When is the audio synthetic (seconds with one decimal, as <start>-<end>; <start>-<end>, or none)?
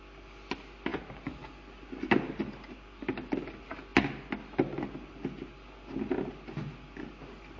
none